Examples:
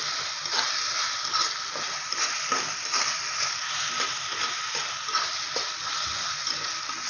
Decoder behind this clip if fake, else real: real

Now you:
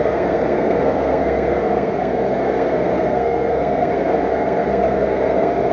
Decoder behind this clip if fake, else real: fake, codec, SNAC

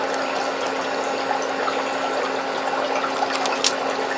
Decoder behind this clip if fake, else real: real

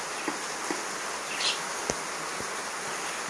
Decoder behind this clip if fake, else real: real